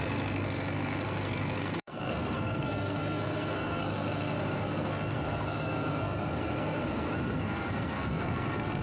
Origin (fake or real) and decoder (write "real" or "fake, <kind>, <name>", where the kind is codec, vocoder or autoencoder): fake, codec, SNAC